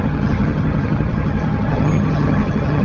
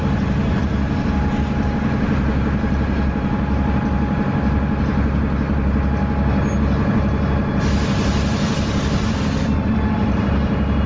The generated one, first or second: first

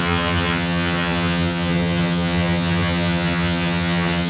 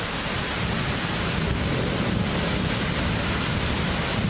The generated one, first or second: first